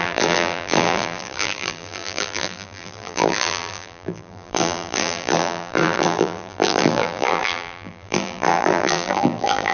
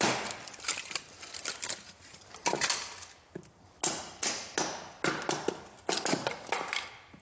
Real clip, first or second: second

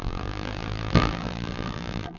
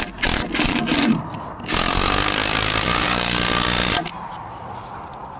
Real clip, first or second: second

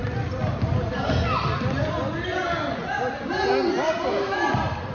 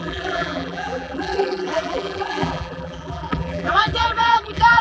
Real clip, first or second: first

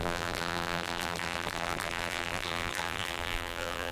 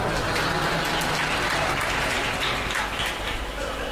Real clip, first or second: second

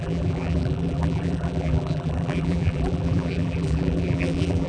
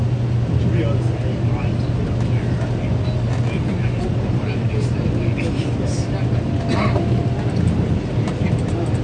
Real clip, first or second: second